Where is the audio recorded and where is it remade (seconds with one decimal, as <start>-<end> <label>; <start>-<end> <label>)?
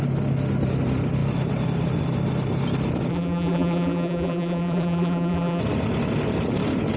0.0-3.1 recorded; 3.1-5.6 remade; 5.6-7.0 recorded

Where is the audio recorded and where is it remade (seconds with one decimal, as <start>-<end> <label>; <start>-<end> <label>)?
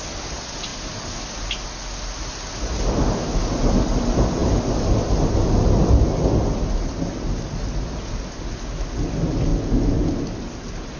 0.0-11.0 recorded